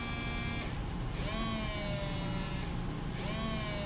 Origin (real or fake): real